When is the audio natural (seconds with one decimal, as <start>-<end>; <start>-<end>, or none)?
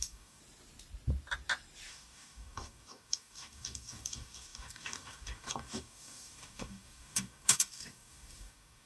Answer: 0.4-1.9